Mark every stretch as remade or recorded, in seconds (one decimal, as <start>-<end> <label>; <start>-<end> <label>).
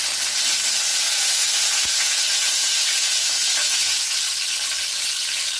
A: 0.0-0.9 recorded; 0.9-4.3 remade; 4.3-5.6 recorded